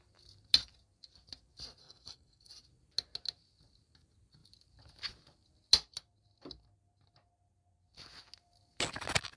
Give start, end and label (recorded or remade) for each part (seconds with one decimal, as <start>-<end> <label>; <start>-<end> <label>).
0.0-1.8 recorded; 1.8-2.5 remade; 2.5-9.4 recorded